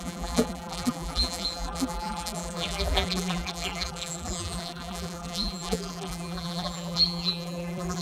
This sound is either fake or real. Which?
fake